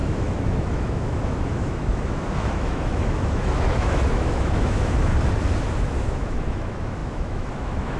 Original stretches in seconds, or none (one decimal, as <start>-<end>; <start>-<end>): 5.1-5.7